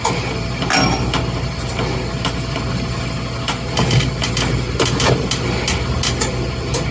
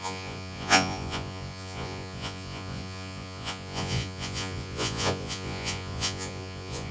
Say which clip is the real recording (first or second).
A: first